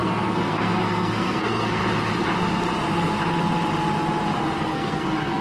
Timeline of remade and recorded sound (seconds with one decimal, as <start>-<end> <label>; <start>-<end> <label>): 0.0-1.8 remade; 1.8-4.6 recorded; 4.6-5.4 remade